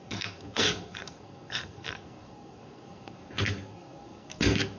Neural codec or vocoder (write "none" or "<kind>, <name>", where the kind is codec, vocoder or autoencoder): codec, SNAC